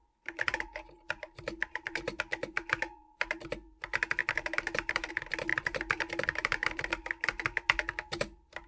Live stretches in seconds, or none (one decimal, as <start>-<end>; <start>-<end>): 3.4-4.2; 5.1-5.5; 6.9-8.7